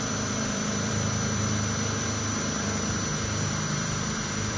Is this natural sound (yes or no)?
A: no